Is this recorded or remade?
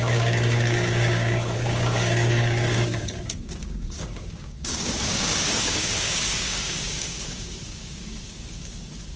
remade